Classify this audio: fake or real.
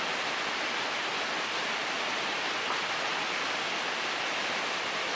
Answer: real